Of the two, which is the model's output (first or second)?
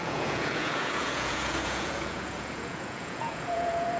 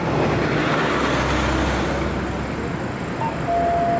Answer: first